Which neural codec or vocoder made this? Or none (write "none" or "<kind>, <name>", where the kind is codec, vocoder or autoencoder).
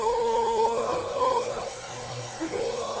codec, SNAC